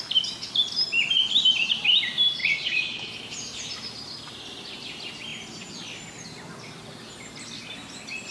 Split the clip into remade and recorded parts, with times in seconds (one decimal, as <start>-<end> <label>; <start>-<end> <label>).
0.0-2.4 recorded; 2.4-3.1 remade; 3.1-8.3 recorded